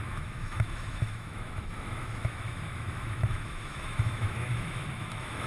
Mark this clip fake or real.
fake